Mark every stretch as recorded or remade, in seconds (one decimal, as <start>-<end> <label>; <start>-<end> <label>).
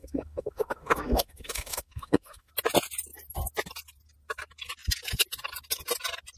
0.0-2.5 remade; 2.5-6.4 recorded